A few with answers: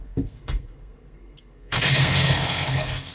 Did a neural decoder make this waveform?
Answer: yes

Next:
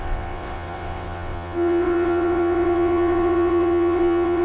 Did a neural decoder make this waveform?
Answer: yes